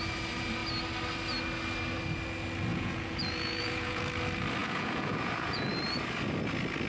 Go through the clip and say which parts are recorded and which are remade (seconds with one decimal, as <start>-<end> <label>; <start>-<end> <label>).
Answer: 0.0-2.7 recorded; 2.7-4.0 remade; 4.0-4.6 recorded; 4.6-5.7 remade; 5.7-6.9 recorded